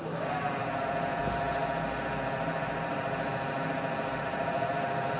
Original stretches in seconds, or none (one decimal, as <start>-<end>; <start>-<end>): 0.0-5.2